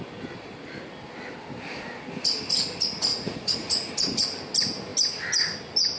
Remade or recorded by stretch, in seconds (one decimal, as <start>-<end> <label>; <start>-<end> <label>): 0.0-3.1 recorded; 3.1-3.9 remade; 3.9-6.0 recorded

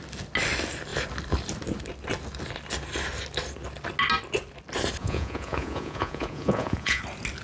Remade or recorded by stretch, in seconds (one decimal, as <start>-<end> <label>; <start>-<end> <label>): 0.0-5.0 recorded; 5.0-7.0 remade; 7.0-7.4 recorded

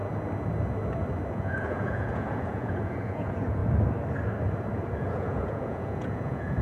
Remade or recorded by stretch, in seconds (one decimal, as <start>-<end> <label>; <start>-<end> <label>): 0.0-1.3 recorded; 1.3-3.6 remade; 3.6-5.0 recorded; 5.0-6.6 remade

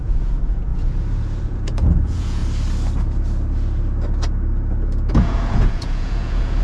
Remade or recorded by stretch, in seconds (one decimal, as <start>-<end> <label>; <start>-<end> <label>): 0.0-0.7 remade; 0.7-1.4 recorded; 1.4-2.4 remade; 2.4-5.1 recorded; 5.1-6.6 remade

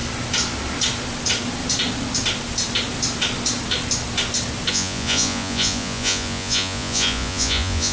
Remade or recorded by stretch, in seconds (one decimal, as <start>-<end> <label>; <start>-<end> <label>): 0.0-4.7 recorded; 4.7-7.9 remade

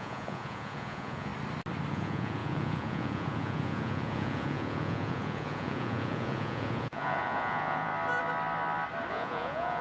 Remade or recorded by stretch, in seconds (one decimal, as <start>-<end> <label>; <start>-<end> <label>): 0.0-1.3 remade; 1.3-1.9 recorded; 1.9-7.9 remade; 7.9-9.1 recorded; 9.1-9.8 remade